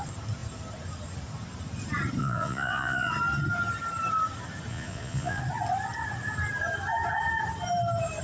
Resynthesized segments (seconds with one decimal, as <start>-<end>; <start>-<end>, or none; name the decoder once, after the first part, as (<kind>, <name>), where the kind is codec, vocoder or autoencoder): 2.2-3.1 (vocoder, Vocos); 4.7-5.4